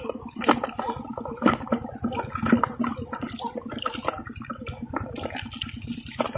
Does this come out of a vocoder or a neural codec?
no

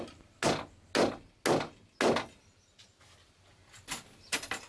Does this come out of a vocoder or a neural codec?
no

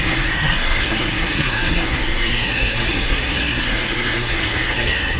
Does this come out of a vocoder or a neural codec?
yes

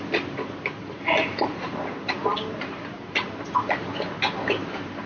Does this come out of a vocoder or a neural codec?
yes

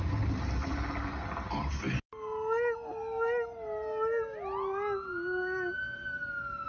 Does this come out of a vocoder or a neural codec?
no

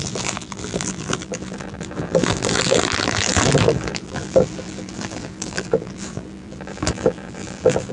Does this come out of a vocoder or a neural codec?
yes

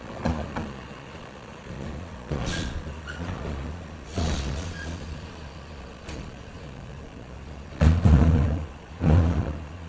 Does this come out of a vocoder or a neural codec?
yes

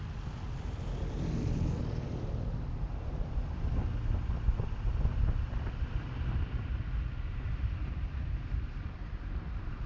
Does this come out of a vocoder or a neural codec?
yes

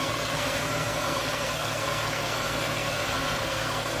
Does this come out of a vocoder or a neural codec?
yes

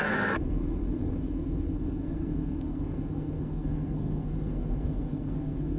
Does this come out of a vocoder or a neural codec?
yes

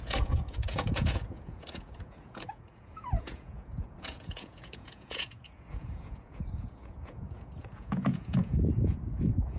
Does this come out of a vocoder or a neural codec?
yes